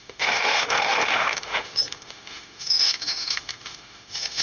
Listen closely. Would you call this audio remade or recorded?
remade